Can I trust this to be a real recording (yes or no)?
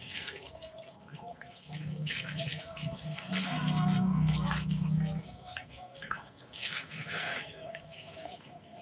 no